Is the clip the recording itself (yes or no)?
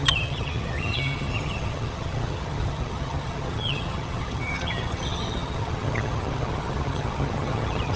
no